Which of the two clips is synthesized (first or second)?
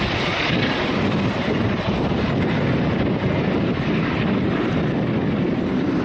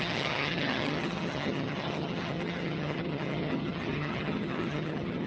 second